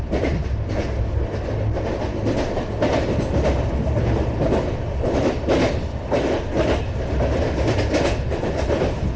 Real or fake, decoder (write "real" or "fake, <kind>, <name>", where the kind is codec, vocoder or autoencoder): real